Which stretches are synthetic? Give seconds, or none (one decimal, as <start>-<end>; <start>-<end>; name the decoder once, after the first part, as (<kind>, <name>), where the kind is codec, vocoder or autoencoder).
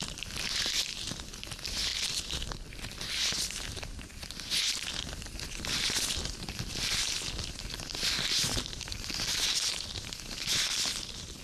8.4-9.1 (vocoder, BigVGAN v2)